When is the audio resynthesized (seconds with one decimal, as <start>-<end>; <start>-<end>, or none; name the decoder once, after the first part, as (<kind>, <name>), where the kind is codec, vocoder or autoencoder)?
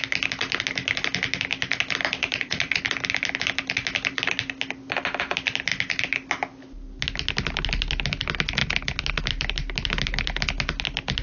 2.2-2.8 (vocoder, Vocos)